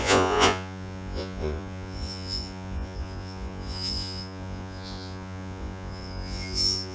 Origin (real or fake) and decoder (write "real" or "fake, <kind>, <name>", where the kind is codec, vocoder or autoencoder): fake, vocoder, Vocos